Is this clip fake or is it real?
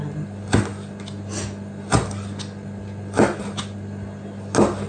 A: real